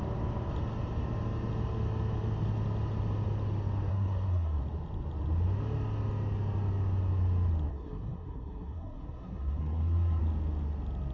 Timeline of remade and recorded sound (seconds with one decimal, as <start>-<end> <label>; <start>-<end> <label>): 0.0-3.9 recorded; 3.9-4.6 remade; 4.6-7.7 recorded; 7.7-10.2 remade; 10.2-11.1 recorded